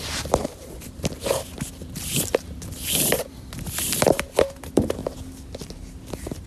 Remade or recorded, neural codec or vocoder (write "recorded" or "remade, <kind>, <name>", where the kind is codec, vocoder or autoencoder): remade, vocoder, BigVGAN v2